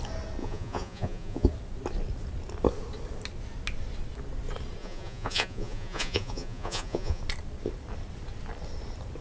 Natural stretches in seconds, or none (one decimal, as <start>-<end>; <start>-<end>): 0.0-0.4; 1.5-4.8; 7.2-9.2